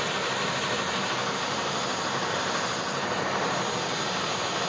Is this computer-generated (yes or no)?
no